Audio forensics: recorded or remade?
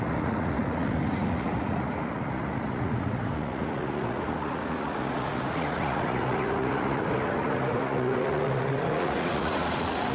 remade